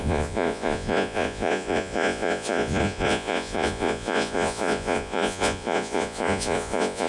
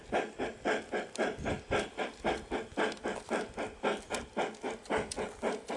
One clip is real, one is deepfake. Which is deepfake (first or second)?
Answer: first